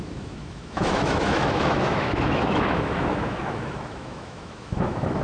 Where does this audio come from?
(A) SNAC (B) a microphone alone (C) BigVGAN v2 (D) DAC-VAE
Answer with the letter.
D